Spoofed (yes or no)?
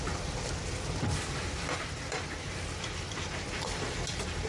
yes